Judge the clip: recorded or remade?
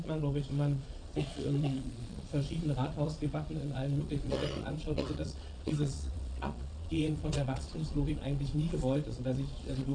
remade